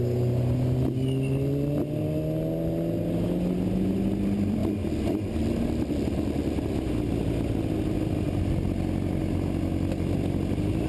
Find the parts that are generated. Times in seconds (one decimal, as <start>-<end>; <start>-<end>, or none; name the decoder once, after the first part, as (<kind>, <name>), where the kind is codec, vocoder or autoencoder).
none